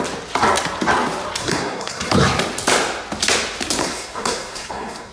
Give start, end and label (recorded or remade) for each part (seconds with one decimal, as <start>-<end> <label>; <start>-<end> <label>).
0.0-1.4 recorded; 1.4-2.1 remade; 2.1-3.8 recorded; 3.8-5.1 remade